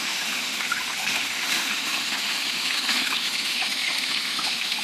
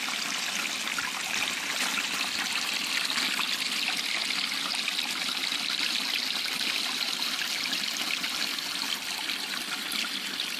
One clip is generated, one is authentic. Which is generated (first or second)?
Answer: first